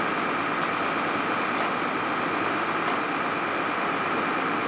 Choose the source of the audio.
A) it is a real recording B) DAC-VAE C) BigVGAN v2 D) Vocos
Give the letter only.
A